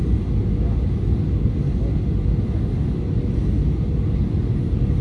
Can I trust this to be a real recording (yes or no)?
yes